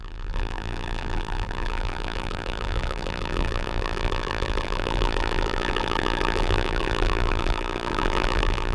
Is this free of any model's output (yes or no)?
no